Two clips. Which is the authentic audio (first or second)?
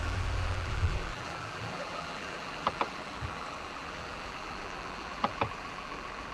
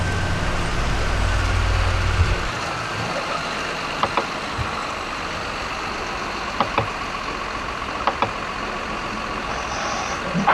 second